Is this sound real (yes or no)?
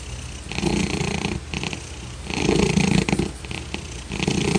yes